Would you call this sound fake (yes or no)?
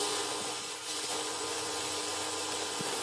yes